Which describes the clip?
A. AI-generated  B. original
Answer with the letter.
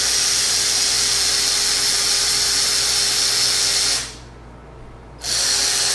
B